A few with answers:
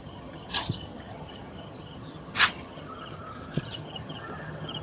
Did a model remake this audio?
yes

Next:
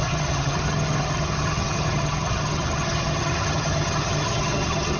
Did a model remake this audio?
yes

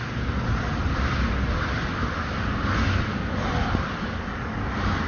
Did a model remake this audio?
no